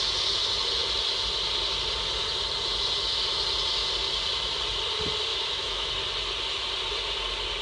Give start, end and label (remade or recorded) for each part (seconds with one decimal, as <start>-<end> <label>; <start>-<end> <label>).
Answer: 0.0-5.3 recorded; 5.3-5.9 remade; 5.9-7.6 recorded